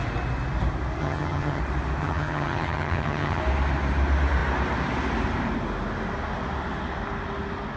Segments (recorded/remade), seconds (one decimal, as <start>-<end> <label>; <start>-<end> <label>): 0.0-1.0 recorded; 1.0-1.6 remade; 1.6-2.0 recorded; 2.0-3.4 remade; 3.4-7.8 recorded